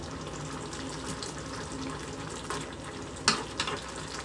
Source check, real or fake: real